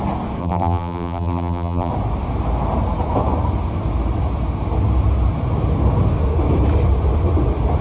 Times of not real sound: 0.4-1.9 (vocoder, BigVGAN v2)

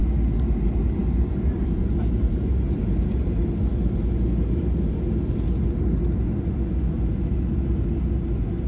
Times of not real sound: 1.0-3.2 (vocoder, BigVGAN v2)